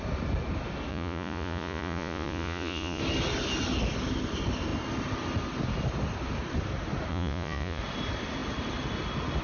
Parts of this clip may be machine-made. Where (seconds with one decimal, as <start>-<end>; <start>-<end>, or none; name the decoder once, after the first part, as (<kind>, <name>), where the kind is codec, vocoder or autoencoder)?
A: 0.9-3.0 (vocoder, Vocos); 7.1-7.8